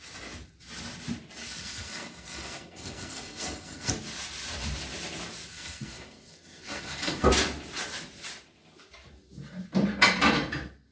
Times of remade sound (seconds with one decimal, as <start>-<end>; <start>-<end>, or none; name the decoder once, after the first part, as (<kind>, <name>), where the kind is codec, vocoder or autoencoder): 1.4-3.9 (codec, SNAC); 5.5-7.3